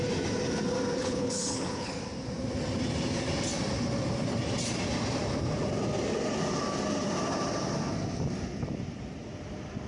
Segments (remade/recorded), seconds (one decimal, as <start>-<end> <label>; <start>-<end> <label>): 0.0-1.0 recorded; 1.0-1.9 remade; 1.9-9.9 recorded